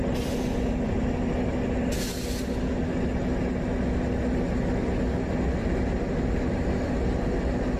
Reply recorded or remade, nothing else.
recorded